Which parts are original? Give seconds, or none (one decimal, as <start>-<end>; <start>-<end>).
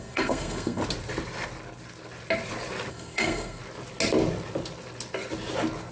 0.8-2.9; 3.6-5.9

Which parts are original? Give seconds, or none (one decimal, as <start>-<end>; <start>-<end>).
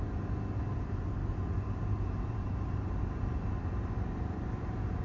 0.0-1.2; 4.2-5.0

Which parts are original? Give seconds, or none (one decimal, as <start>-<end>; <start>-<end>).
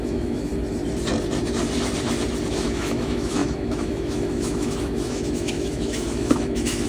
0.5-2.5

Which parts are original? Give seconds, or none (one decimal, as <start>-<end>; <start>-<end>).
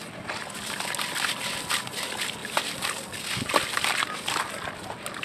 0.0-5.2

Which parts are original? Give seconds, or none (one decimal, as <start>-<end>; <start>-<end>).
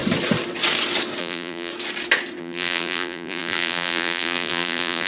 0.0-1.2; 1.7-2.4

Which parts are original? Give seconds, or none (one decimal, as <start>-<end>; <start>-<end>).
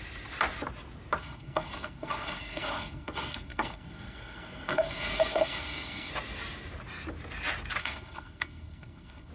0.0-1.2; 6.1-7.8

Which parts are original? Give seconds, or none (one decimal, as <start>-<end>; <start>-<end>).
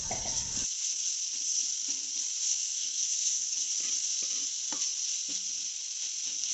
0.0-2.5; 3.7-6.5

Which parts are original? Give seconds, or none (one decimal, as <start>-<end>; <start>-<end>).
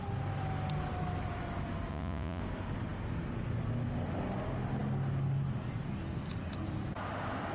0.0-1.9; 2.4-7.5